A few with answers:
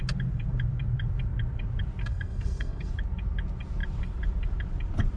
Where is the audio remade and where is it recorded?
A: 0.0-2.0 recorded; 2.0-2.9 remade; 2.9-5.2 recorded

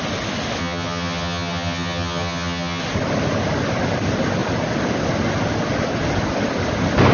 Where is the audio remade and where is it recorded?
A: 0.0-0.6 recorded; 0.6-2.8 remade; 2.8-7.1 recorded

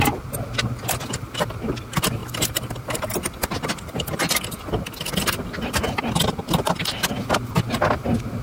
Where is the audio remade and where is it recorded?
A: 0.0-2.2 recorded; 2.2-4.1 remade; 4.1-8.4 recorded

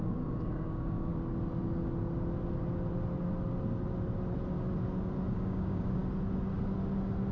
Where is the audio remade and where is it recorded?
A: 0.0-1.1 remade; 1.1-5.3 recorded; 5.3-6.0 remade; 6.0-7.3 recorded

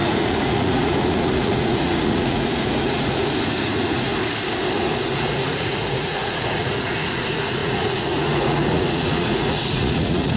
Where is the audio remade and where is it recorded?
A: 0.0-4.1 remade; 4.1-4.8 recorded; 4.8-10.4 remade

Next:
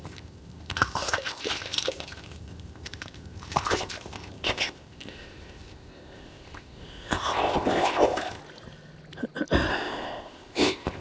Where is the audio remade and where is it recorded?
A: 0.0-8.4 remade; 8.4-9.7 recorded; 9.7-11.0 remade

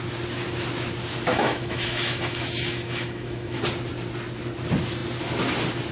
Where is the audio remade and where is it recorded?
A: 0.0-1.3 recorded; 1.3-3.6 remade; 3.6-5.9 recorded

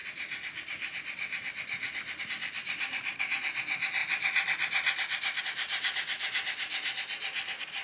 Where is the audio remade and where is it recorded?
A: 0.0-2.2 recorded; 2.2-4.0 remade; 4.0-5.4 recorded; 5.4-7.8 remade